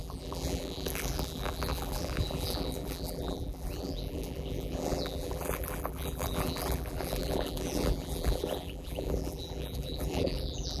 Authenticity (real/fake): fake